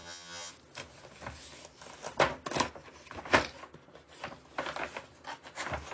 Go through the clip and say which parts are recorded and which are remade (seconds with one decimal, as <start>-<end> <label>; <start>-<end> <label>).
0.0-0.5 remade; 0.5-5.9 recorded